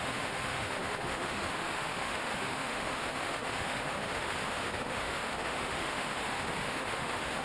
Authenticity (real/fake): fake